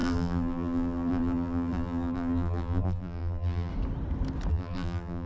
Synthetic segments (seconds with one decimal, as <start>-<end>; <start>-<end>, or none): 0.0-3.7; 4.5-5.3